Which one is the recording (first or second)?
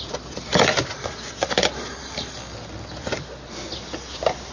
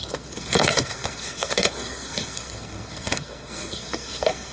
first